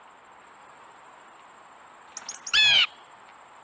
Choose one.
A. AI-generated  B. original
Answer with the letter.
B